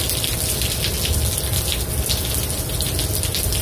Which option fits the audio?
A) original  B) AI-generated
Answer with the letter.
A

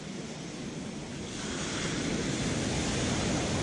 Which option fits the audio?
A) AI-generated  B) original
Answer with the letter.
B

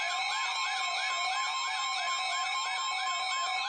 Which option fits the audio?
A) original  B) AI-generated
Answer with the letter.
A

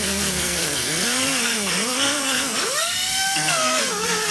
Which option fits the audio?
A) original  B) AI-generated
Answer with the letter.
B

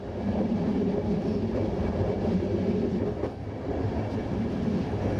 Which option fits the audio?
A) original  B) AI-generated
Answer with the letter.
A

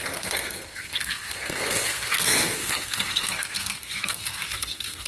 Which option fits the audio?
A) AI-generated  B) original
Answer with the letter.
A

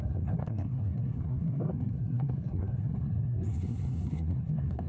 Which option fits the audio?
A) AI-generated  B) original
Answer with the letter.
A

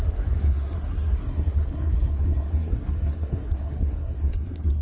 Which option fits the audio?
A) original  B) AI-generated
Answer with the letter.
B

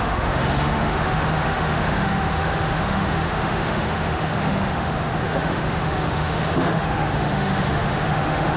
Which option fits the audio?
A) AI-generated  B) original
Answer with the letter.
A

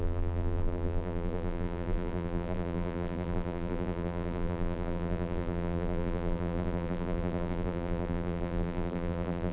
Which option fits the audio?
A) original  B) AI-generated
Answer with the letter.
B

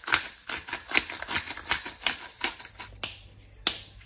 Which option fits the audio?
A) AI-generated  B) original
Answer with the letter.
B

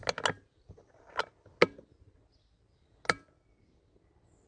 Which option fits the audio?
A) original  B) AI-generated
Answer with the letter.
A